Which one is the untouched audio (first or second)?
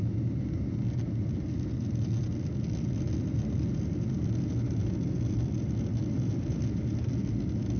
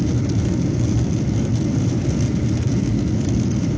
first